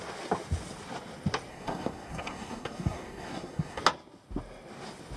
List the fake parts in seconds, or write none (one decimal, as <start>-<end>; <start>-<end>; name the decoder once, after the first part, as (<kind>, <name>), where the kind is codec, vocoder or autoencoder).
1.5-3.8 (codec, SNAC)